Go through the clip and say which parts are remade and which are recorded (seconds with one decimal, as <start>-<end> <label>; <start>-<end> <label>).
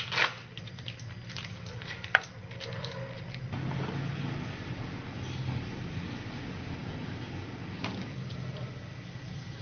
0.0-9.6 recorded